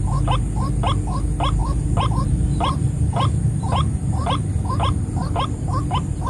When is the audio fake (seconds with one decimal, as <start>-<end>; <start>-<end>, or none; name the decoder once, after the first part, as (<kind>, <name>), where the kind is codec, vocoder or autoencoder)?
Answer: 1.6-4.6 (vocoder, BigVGAN v2)